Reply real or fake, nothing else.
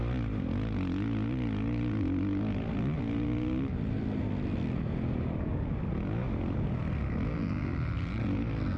real